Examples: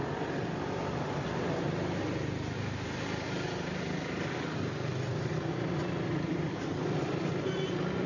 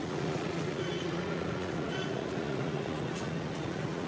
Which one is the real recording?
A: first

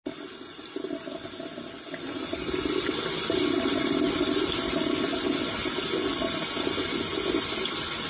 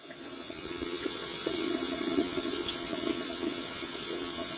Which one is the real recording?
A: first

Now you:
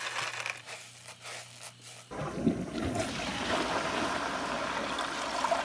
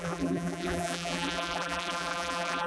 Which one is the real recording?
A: first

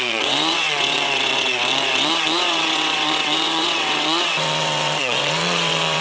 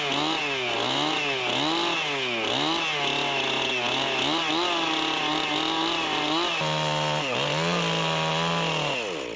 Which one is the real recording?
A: second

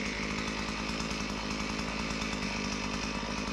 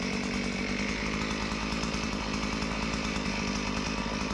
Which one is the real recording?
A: first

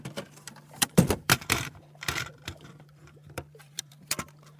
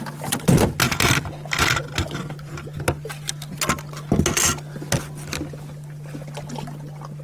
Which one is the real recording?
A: second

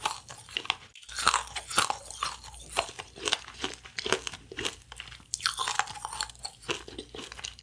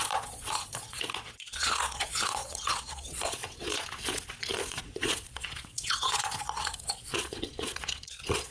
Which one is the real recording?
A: first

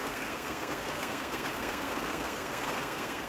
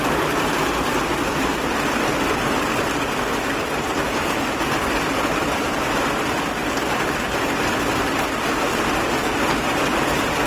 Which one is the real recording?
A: second